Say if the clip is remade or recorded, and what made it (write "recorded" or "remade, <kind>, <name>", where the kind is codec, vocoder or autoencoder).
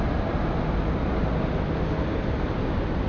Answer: recorded